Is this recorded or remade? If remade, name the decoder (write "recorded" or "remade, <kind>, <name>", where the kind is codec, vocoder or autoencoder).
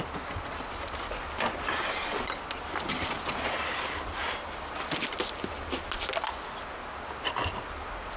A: recorded